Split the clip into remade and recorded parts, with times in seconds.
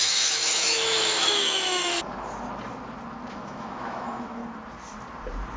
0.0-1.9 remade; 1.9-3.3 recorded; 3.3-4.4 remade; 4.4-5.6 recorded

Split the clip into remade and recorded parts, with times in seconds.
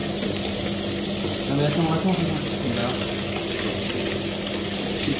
0.0-5.2 recorded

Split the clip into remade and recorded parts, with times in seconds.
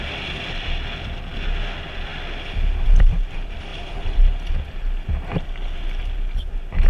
0.0-6.9 recorded